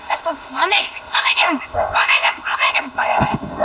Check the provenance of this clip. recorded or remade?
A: remade